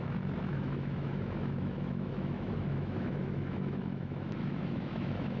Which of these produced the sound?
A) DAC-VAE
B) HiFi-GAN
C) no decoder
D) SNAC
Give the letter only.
A